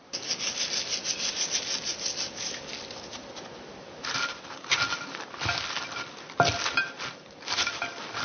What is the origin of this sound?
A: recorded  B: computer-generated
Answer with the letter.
A